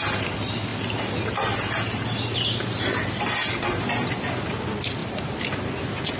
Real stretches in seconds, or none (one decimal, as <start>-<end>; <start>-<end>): 0.0-6.2